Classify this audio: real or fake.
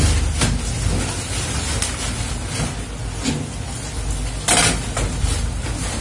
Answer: real